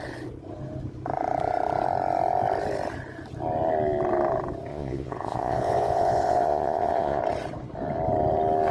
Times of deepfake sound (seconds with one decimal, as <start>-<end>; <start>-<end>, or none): 4.7-7.2